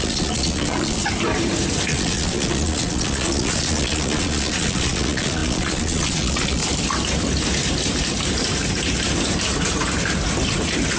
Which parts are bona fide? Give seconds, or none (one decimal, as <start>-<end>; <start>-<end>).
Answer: 1.0-1.9; 6.6-11.0